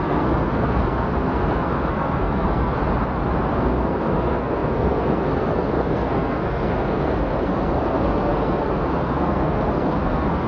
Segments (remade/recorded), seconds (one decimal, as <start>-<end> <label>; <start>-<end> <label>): 0.0-2.8 remade; 2.8-3.5 recorded; 3.5-10.5 remade